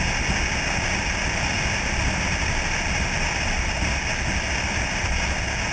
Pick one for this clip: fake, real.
real